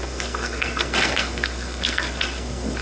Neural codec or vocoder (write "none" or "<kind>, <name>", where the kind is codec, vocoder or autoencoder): codec, SNAC